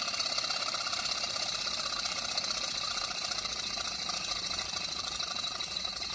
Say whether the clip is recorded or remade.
remade